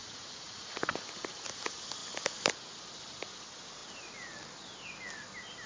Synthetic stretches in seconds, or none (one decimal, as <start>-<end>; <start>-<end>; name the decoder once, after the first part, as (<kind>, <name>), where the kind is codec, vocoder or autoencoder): 0.0-0.7 (vocoder, Vocos)